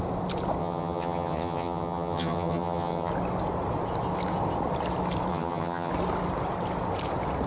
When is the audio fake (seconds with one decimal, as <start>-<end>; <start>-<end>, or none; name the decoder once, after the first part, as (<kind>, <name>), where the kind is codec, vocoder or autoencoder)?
0.6-3.1 (vocoder, HiFi-GAN); 5.3-5.9